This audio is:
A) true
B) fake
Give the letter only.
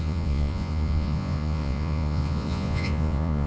B